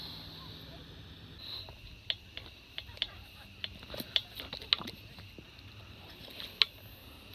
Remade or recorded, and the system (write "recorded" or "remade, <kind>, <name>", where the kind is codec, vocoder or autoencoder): recorded